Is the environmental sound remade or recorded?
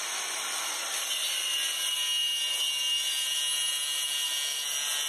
recorded